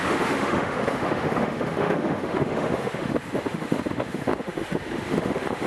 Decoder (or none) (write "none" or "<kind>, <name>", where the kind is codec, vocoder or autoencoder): autoencoder, DAC-VAE